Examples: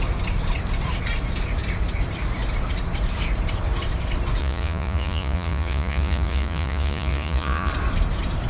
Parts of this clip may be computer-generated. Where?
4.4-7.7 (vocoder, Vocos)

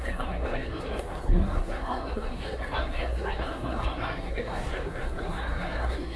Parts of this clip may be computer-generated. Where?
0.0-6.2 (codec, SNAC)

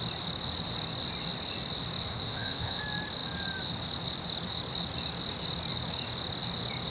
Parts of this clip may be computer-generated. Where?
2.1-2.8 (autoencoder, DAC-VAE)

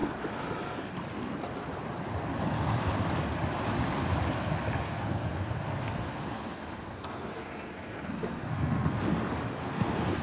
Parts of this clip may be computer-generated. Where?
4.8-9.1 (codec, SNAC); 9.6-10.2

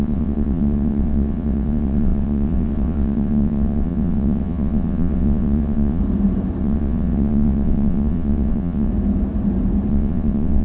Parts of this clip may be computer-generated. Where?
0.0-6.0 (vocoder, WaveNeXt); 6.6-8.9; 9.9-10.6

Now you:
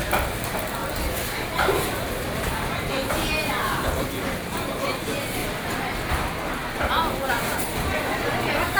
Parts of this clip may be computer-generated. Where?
0.8-4.1 (vocoder, BigVGAN v2); 5.4-6.1; 6.6-8.8

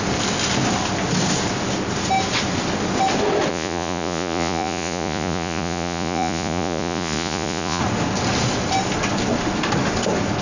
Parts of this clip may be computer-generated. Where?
3.5-7.8 (vocoder, Vocos)